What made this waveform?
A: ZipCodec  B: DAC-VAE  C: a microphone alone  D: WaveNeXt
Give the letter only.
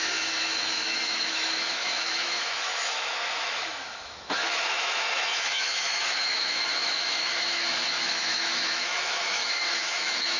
B